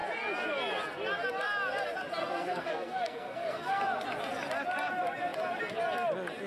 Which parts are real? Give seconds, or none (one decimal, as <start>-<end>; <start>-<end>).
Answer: 0.0-2.2; 3.8-6.5